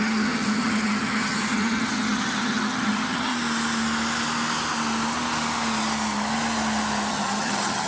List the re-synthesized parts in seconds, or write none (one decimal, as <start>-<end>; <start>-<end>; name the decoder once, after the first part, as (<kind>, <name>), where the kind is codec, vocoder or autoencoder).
0.0-3.3 (vocoder, HiFi-GAN); 7.1-7.9